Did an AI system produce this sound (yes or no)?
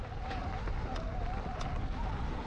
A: no